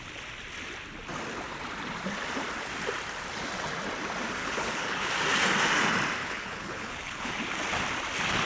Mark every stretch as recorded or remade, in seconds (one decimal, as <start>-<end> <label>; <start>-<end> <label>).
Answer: 0.0-4.4 recorded; 4.4-5.1 remade; 5.1-6.2 recorded; 6.2-7.3 remade; 7.3-8.5 recorded